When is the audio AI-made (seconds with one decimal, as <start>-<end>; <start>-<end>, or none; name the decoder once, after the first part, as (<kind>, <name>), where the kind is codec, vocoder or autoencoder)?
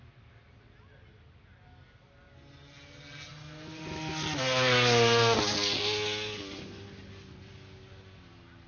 none